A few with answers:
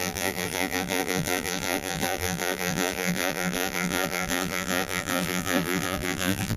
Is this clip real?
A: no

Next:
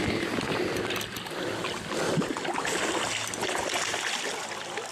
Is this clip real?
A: yes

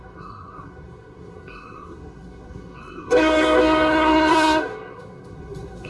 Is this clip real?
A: no